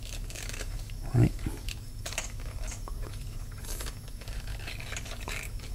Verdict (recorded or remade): remade